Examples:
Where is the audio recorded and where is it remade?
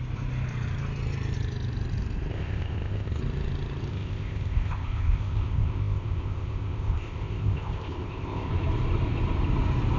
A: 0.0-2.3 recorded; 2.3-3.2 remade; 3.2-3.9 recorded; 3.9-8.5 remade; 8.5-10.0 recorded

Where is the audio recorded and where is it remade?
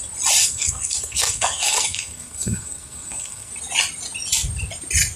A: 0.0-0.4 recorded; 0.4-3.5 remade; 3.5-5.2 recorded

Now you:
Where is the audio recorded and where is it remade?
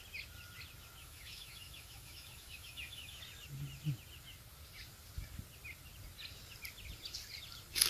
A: 0.0-1.0 recorded; 1.0-3.2 remade; 3.2-7.9 recorded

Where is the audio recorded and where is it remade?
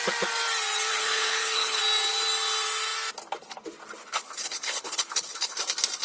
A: 0.0-0.9 recorded; 0.9-1.8 remade; 1.8-4.0 recorded; 4.0-5.6 remade; 5.6-6.0 recorded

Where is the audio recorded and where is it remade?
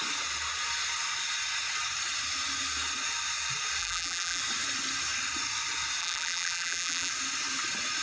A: 0.0-3.8 recorded; 3.8-4.4 remade; 4.4-6.0 recorded; 6.0-7.1 remade; 7.1-8.0 recorded